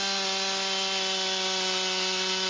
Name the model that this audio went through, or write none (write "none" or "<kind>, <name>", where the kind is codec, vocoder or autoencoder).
none